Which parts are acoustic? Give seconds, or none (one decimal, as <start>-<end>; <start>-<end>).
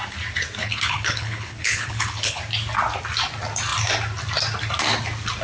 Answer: 0.0-0.6; 2.4-5.4